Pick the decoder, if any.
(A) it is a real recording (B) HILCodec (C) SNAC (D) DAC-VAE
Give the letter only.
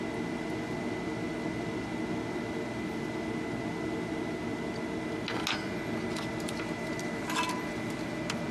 A